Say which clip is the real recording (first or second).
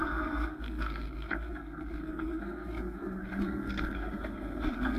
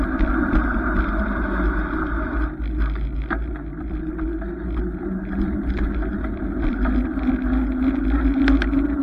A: second